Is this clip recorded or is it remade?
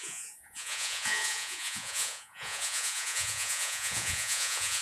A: remade